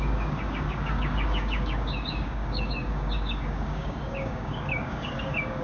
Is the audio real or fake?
fake